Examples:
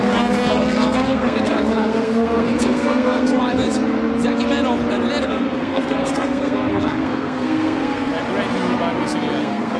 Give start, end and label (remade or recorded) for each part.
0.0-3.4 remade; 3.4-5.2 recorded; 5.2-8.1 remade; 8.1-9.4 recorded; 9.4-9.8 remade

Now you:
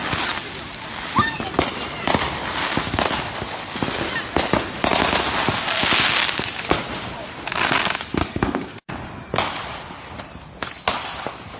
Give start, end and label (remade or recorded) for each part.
0.0-8.2 recorded; 8.2-8.9 remade; 8.9-11.6 recorded

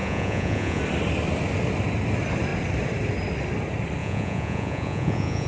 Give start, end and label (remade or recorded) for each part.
0.0-0.8 remade; 0.8-4.0 recorded; 4.0-5.5 remade

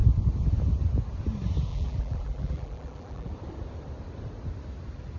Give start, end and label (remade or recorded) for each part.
0.0-1.7 recorded; 1.7-3.3 remade; 3.3-5.2 recorded

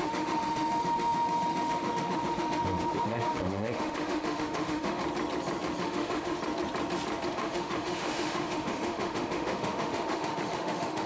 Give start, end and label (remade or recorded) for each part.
0.0-5.0 remade; 5.0-5.8 recorded; 5.8-6.4 remade; 6.4-7.3 recorded; 7.3-11.1 remade